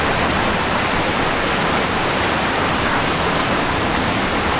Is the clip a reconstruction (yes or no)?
no